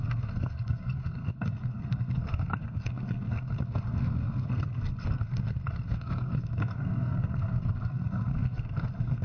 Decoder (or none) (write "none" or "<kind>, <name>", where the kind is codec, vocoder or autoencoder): codec, SNAC